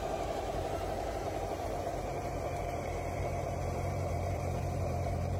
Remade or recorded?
remade